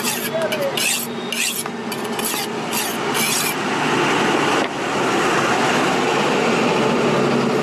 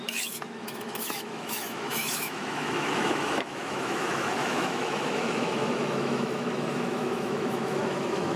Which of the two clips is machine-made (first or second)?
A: second